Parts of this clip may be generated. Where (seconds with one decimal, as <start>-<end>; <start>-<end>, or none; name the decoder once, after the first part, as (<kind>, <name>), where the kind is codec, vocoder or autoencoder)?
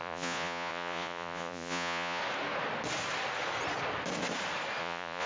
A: 0.0-2.2 (vocoder, Vocos); 4.8-5.3